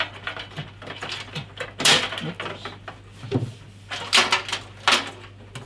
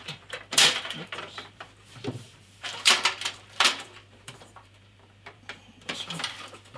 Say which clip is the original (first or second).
first